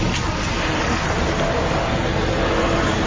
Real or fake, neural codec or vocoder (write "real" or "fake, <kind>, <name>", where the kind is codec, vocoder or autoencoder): real